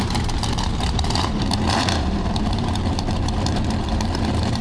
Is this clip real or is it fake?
fake